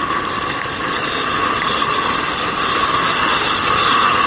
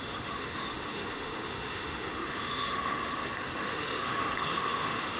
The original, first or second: first